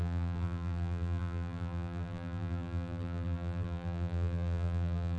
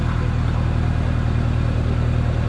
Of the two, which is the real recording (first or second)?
second